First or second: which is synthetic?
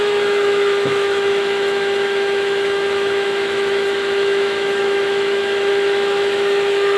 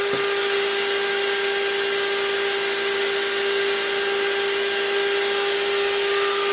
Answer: first